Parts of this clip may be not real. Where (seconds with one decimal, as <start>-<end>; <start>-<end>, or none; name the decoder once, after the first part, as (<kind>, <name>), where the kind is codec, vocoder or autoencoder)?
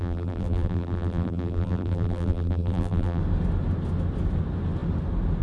0.0-3.2 (vocoder, BigVGAN v2)